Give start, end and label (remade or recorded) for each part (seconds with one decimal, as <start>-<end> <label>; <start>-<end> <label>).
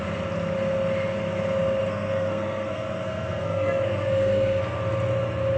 0.0-1.8 recorded; 1.8-4.6 remade; 4.6-5.6 recorded